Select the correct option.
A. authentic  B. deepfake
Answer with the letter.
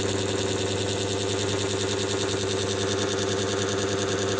A